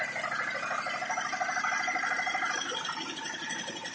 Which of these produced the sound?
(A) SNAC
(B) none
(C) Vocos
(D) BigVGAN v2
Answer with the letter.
B